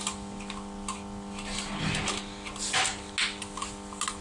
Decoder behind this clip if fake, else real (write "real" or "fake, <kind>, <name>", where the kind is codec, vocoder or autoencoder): real